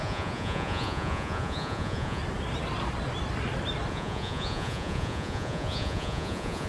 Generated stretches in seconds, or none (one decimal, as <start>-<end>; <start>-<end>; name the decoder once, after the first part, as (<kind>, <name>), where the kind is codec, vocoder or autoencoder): 0.0-2.2 (vocoder, Vocos); 3.9-6.7